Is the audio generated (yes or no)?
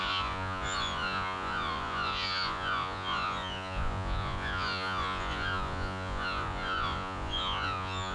yes